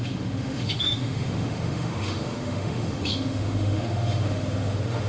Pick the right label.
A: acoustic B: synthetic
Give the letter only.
B